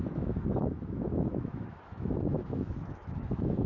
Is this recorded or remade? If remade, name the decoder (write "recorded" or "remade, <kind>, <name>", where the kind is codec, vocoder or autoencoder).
remade, autoencoder, DAC-VAE